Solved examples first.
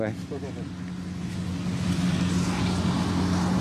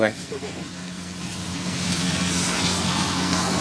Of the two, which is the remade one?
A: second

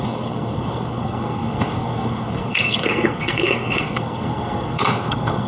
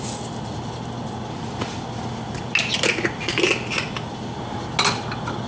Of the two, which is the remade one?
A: first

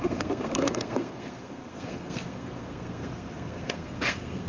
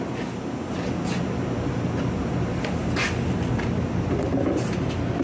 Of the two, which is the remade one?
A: first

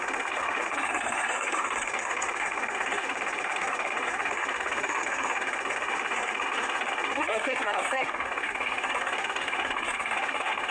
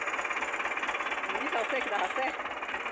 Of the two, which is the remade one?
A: first